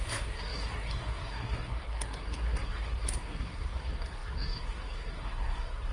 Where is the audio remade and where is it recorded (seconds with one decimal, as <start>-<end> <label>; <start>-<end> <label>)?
0.0-5.9 remade